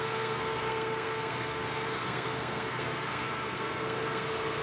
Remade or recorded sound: remade